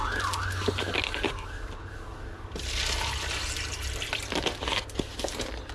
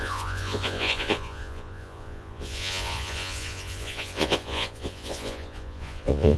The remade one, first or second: second